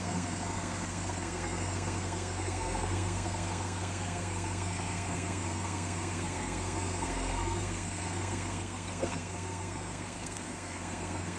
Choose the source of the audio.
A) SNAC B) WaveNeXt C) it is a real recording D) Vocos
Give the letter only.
A